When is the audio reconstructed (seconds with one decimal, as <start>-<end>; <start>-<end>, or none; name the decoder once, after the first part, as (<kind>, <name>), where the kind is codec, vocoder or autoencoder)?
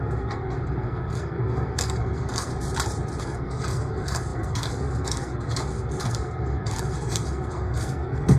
0.0-2.5 (codec, SNAC); 3.2-8.4